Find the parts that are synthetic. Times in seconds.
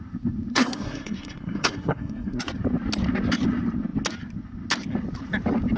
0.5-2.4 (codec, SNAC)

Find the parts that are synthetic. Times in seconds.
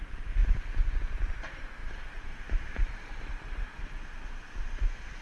0.4-1.3 (vocoder, BigVGAN v2)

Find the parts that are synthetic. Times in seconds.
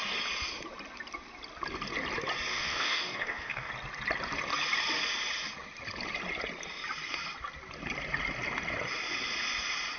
2.5-3.7 (codec, DAC)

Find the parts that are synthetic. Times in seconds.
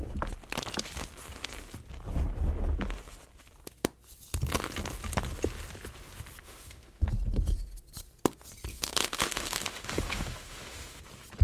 6.4-7.0 (autoencoder, DAC-VAE); 8.7-11.0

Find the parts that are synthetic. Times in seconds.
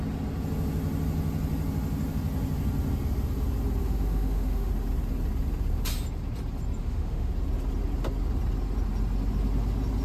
3.8-4.7 (autoencoder, DAC-VAE); 6.8-7.3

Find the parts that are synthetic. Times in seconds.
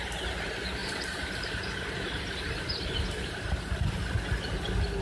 0.8-2.7 (vocoder, BigVGAN v2)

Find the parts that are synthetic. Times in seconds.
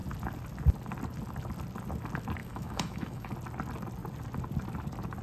2.4-3.3 (autoencoder, DAC-VAE)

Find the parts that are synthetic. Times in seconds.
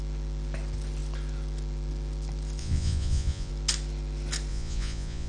2.6-3.5 (vocoder, Vocos); 4.5-5.3